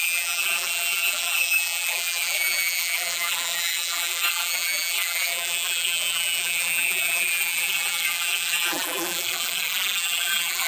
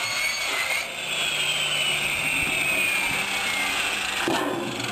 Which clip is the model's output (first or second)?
first